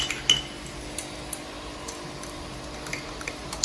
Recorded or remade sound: recorded